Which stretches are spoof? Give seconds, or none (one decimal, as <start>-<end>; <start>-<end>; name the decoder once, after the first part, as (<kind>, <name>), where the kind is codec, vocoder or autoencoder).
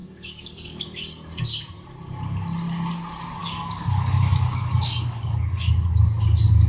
0.0-1.3 (codec, DAC); 3.4-5.7